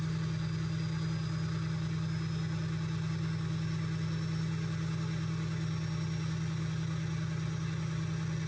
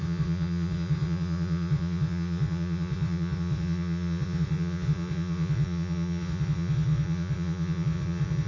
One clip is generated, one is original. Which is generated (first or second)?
second